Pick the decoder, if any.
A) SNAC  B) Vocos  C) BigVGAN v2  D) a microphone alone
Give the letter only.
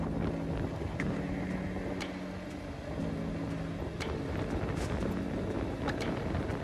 D